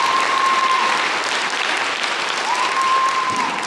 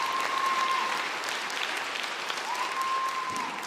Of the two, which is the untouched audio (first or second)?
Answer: second